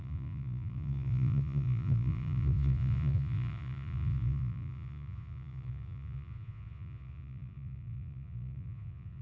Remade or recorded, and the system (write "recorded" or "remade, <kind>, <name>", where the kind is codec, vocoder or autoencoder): remade, vocoder, Vocos